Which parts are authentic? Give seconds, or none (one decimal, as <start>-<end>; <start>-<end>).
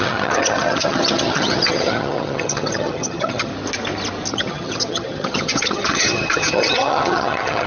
3.5-4.3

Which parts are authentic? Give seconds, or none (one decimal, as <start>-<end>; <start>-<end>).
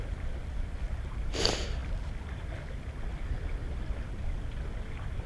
0.0-5.3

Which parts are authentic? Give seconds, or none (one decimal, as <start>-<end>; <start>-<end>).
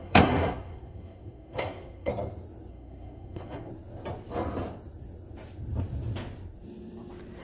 2.1-2.7; 3.7-7.4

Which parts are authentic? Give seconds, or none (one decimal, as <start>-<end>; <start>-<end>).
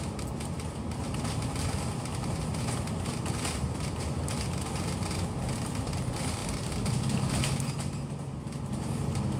0.0-6.4; 7.0-9.4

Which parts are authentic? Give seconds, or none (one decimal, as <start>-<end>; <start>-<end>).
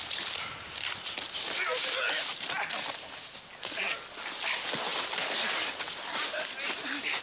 0.0-7.2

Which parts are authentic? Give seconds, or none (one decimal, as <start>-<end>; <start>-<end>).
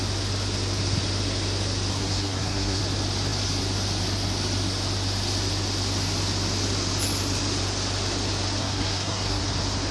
0.0-1.9; 2.8-8.6; 9.4-9.9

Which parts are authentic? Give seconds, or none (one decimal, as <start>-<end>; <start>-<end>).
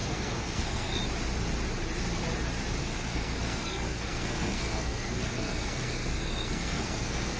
1.0-2.8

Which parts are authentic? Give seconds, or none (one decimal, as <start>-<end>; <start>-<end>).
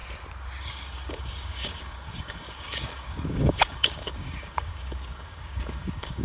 0.0-0.6